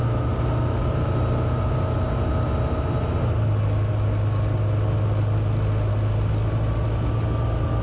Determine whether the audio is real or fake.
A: real